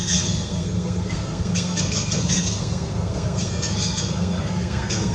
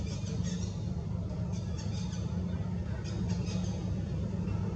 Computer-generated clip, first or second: first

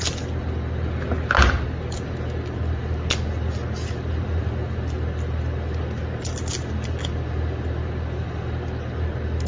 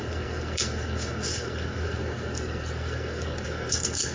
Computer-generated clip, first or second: second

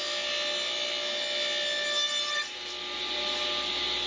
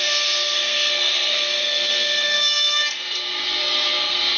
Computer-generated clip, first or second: second